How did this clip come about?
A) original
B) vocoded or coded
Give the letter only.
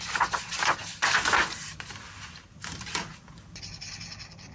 A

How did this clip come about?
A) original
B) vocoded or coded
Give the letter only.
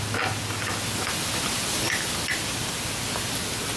A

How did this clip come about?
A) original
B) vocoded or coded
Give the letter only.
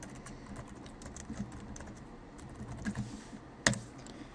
A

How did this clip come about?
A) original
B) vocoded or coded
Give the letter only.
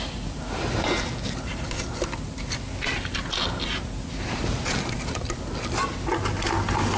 A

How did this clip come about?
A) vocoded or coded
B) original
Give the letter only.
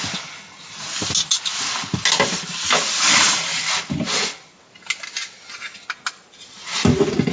B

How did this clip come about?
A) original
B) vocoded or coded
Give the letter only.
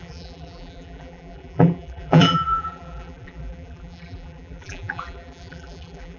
B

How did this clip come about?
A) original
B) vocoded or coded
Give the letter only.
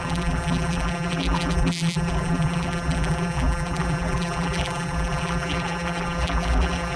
B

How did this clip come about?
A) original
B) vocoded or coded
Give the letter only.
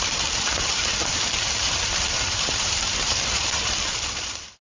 B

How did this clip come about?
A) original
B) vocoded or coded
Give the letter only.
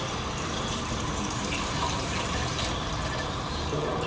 B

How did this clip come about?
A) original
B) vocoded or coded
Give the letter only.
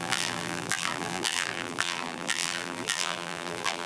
B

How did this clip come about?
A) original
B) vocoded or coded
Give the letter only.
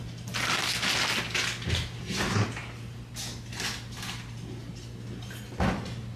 A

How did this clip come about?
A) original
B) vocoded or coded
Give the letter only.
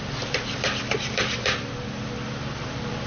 B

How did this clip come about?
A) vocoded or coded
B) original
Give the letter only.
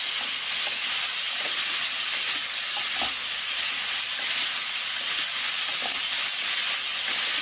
B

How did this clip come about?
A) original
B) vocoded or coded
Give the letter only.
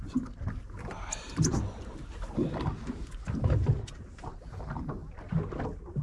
A